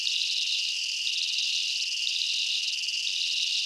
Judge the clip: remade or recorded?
recorded